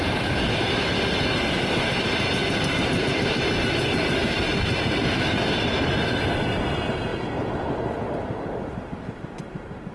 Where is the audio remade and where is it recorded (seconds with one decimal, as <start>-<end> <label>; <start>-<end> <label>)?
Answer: 0.0-9.9 recorded